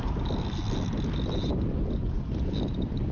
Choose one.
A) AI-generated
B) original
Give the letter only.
B